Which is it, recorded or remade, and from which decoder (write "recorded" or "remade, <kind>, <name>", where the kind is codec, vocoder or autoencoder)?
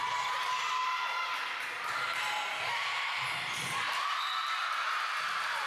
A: recorded